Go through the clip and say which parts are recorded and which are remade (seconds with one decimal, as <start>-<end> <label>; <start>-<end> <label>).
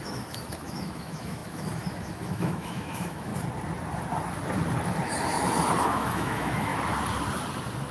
0.0-3.3 remade; 3.3-5.8 recorded; 5.8-6.7 remade; 6.7-7.9 recorded